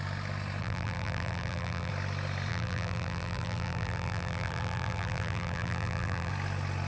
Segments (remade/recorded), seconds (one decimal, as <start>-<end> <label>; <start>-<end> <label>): 0.0-0.6 recorded; 0.6-1.9 remade; 1.9-2.5 recorded; 2.5-6.3 remade; 6.3-6.9 recorded